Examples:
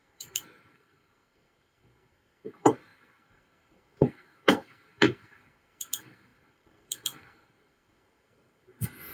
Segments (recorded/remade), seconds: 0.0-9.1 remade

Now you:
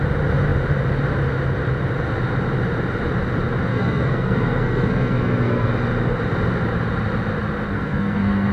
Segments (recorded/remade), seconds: 0.0-3.7 recorded; 3.7-5.7 remade; 5.7-7.7 recorded; 7.7-8.5 remade

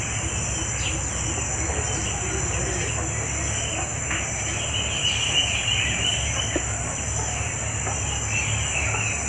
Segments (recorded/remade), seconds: 0.0-9.3 recorded

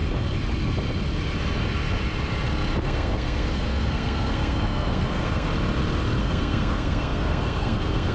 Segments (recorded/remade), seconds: 0.0-2.8 recorded; 2.8-5.5 remade; 5.5-6.2 recorded; 6.2-8.1 remade